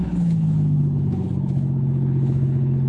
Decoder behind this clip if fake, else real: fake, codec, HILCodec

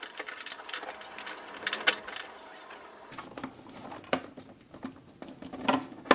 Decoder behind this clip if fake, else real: real